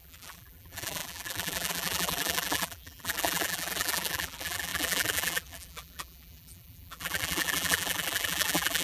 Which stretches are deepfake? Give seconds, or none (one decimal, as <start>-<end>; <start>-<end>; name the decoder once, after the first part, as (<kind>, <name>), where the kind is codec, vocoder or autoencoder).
0.0-8.8 (vocoder, BigVGAN v2)